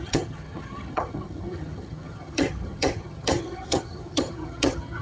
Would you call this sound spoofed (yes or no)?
yes